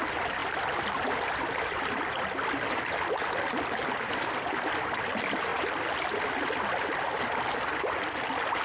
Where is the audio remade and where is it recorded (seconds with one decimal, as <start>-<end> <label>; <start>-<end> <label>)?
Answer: 0.0-8.6 recorded